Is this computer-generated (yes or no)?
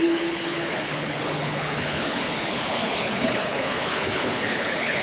yes